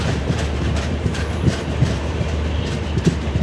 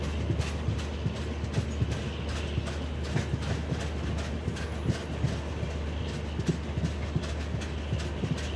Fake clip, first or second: first